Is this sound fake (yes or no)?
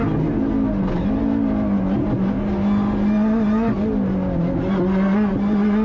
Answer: no